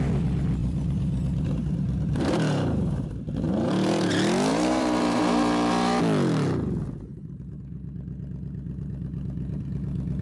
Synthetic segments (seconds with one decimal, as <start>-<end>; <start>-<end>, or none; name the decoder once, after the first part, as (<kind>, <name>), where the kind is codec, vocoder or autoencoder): 0.6-4.1 (vocoder, BigVGAN v2); 4.5-5.2